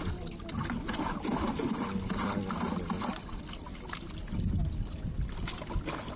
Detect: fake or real real